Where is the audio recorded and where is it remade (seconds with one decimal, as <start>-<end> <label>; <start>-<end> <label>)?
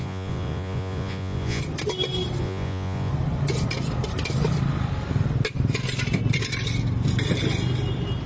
0.0-1.6 remade; 1.6-2.4 recorded; 2.4-3.1 remade; 3.1-8.3 recorded